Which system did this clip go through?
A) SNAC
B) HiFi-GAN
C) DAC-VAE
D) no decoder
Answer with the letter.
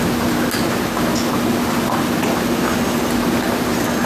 D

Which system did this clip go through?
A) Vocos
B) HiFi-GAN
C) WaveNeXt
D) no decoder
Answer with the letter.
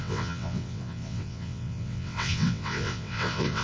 C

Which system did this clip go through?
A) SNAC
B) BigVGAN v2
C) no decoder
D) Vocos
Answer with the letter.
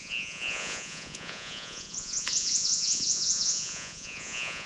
D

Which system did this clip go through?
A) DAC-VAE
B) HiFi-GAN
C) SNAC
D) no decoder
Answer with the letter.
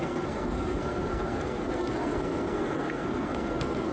C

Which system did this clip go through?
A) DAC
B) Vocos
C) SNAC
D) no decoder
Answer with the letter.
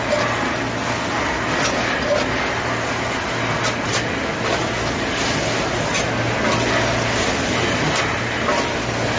D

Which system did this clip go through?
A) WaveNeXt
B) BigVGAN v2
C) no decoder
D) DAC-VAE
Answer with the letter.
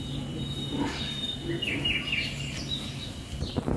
C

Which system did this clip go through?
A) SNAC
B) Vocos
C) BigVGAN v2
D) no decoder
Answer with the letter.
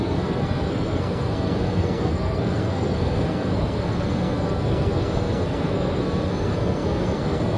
A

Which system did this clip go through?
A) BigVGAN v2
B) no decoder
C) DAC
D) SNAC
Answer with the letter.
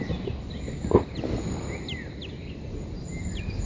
B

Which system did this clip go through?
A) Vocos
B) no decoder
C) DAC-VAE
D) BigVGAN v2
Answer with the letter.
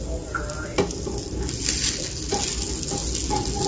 B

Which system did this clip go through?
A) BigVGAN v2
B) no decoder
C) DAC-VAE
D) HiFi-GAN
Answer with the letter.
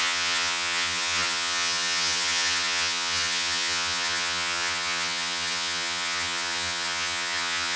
D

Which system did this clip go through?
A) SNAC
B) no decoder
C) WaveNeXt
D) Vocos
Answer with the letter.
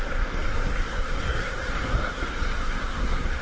A